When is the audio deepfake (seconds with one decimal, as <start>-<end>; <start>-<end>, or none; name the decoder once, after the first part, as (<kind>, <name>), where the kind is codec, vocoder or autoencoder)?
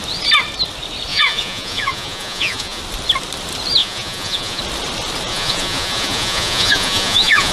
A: 1.1-2.8 (vocoder, Vocos); 3.8-4.6; 5.3-7.5